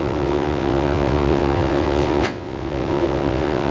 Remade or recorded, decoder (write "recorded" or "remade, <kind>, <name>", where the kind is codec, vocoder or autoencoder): remade, vocoder, WaveNeXt